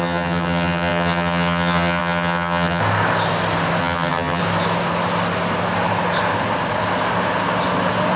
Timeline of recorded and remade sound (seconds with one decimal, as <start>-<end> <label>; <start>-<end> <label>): 0.0-2.8 remade; 2.8-3.8 recorded; 3.8-4.4 remade; 4.4-8.2 recorded